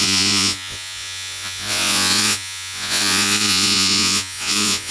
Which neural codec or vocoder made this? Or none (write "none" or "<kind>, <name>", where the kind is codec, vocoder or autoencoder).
vocoder, Vocos